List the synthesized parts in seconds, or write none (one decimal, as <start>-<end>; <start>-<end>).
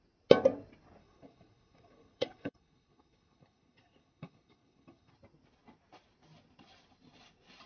1.0-5.1